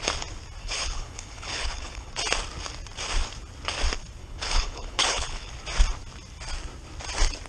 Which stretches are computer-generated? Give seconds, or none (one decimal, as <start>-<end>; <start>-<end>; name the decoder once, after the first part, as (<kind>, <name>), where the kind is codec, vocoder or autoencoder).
0.6-2.1 (codec, HILCodec); 4.2-5.5